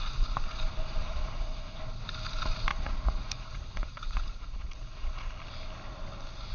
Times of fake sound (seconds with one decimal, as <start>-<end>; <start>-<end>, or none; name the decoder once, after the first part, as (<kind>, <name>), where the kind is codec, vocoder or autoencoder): 1.0-1.8 (vocoder, Vocos); 2.7-5.3